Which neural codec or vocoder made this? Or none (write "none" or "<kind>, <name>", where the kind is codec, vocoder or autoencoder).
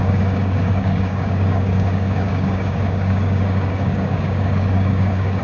codec, DAC